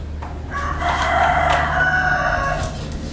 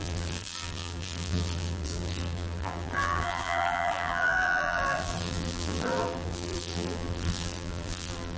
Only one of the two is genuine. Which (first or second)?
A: first